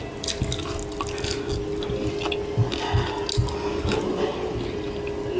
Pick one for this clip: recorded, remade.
recorded